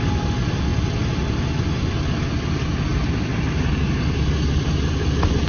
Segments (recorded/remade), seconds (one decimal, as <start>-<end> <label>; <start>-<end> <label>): 0.0-2.9 recorded; 2.9-3.9 remade; 3.9-5.5 recorded